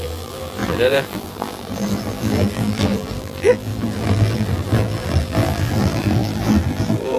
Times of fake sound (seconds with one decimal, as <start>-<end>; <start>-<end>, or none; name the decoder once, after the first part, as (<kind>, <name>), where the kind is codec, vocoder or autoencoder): 0.0-7.2 (vocoder, BigVGAN v2)